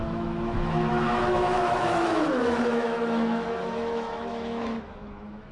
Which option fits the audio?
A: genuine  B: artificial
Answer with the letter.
B